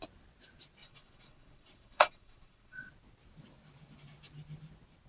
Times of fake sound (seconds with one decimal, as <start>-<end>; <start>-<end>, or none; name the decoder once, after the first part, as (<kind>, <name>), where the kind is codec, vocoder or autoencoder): 0.8-2.9 (vocoder, Vocos)